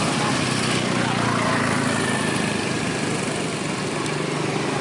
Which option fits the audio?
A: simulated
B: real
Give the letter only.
B